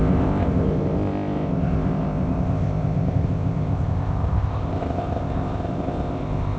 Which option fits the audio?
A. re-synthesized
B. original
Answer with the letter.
A